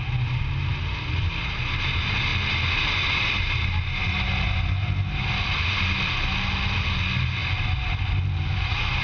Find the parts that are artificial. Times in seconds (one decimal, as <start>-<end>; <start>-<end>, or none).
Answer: none